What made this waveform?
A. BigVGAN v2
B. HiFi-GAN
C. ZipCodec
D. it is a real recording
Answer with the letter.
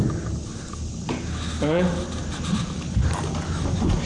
D